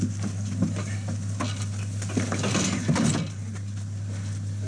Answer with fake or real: real